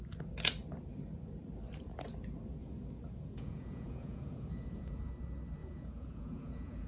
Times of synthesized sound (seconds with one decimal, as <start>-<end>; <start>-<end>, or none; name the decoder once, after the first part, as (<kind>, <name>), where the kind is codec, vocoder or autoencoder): 2.6-5.1 (vocoder, Vocos); 5.6-6.9